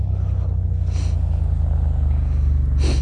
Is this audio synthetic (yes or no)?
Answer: no